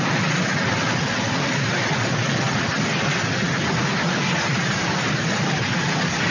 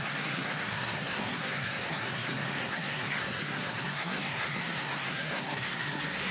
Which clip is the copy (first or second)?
second